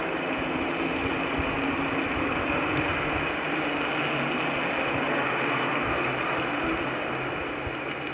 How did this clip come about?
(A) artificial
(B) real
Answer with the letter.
B